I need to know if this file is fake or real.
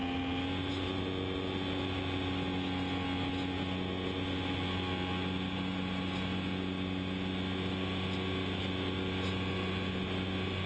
real